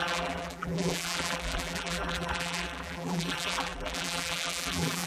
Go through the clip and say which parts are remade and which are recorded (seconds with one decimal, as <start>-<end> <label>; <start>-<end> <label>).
0.0-5.1 remade